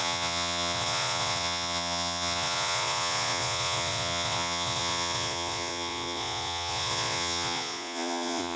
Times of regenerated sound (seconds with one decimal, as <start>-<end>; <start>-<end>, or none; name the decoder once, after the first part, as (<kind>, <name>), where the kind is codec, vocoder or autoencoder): 0.0-8.6 (vocoder, Vocos)